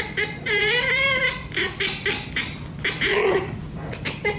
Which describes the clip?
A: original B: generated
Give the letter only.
B